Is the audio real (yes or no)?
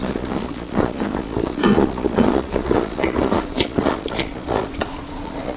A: no